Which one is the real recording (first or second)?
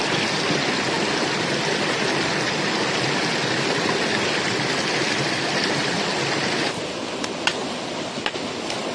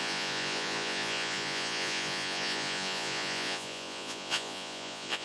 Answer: first